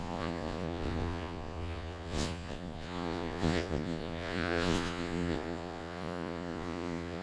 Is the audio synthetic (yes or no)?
yes